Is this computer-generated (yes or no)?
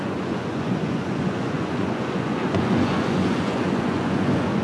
yes